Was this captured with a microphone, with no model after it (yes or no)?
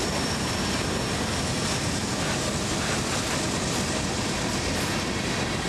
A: yes